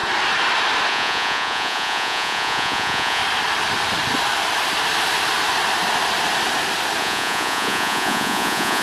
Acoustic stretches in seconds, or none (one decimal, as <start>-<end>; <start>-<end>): 0.0-0.9; 3.2-7.0